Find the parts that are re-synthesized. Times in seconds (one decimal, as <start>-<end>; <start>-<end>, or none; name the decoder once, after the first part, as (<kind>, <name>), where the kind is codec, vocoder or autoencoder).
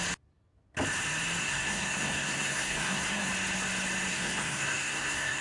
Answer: 1.4-3.3 (codec, SNAC); 4.1-5.4